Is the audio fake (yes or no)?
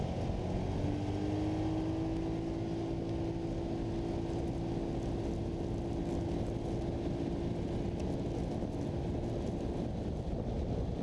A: no